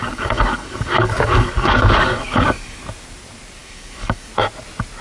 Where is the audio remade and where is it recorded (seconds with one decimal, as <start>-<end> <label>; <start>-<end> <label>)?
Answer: 0.0-2.8 remade; 2.8-3.6 recorded; 3.6-4.3 remade; 4.3-5.0 recorded